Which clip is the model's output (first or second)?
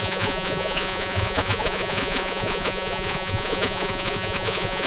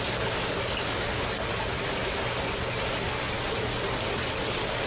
first